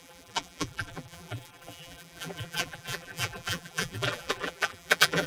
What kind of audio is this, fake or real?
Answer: fake